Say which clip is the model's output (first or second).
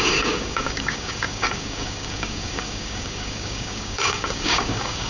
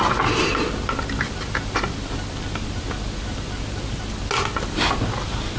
first